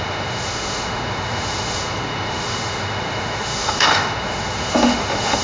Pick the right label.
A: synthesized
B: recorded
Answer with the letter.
A